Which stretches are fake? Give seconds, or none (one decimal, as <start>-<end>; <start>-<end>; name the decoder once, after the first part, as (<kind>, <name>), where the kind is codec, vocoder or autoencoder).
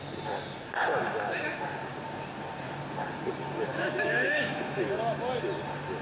0.9-1.5 (autoencoder, DAC-VAE); 3.7-5.2